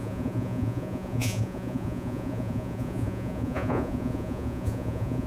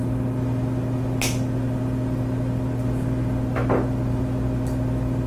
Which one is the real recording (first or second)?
second